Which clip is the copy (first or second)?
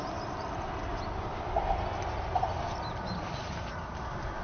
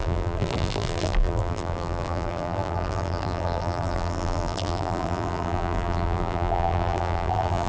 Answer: second